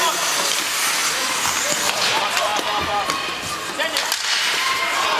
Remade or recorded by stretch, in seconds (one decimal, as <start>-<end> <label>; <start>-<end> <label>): 0.0-5.2 recorded